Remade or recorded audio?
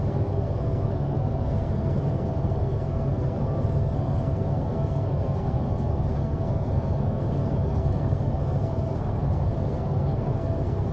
remade